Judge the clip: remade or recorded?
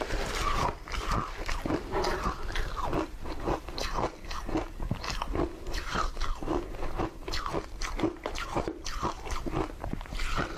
remade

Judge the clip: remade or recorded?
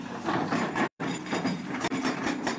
remade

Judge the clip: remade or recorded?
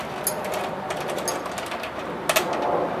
recorded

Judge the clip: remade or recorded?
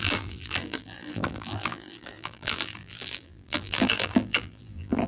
remade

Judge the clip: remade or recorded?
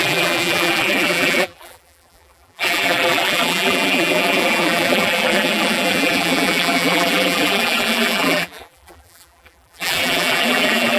remade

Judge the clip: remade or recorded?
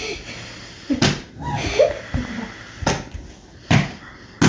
recorded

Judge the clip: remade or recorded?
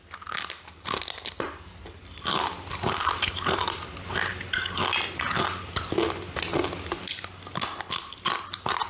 recorded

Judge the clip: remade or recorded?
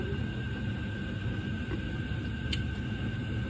recorded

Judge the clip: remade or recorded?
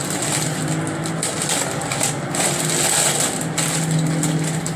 recorded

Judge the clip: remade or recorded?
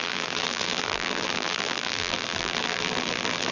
remade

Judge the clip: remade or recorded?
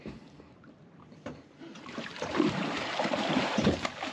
remade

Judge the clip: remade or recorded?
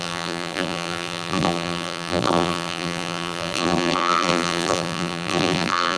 remade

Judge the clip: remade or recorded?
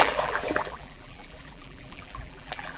remade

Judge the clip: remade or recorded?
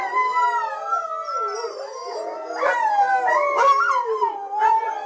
recorded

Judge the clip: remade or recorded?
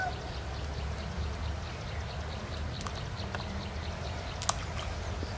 recorded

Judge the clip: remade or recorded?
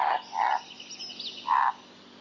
recorded